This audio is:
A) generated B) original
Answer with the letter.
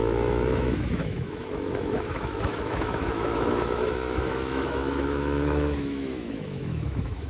A